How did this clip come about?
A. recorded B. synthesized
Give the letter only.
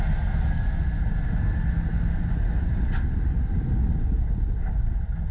A